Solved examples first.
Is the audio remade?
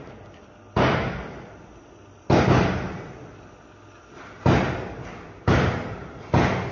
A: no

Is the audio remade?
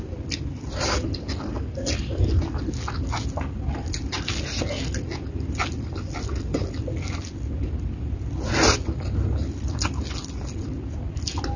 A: no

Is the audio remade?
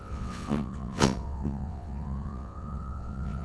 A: yes